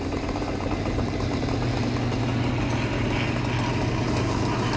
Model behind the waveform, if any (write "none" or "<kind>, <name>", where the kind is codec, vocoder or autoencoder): none